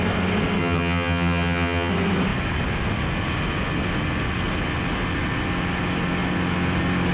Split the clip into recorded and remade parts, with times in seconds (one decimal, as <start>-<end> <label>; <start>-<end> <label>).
0.0-0.6 recorded; 0.6-1.9 remade; 1.9-7.1 recorded